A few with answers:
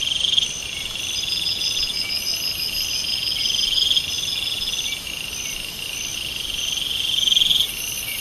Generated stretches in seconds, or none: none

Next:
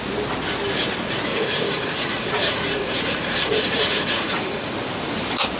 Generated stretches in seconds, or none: 1.3-4.7 (vocoder, Vocos)

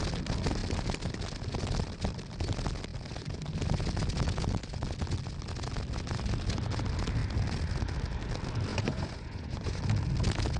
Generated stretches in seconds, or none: 8.7-9.8 (vocoder, Vocos)